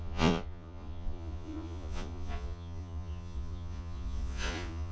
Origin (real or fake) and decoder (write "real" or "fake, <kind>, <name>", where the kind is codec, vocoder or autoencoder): fake, vocoder, Vocos